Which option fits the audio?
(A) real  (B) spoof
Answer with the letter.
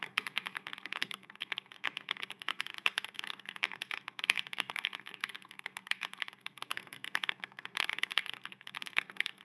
B